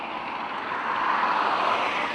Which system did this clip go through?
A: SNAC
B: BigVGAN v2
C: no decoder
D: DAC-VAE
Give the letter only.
C